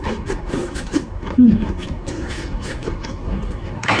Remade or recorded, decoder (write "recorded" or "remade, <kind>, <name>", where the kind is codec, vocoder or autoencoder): remade, codec, SNAC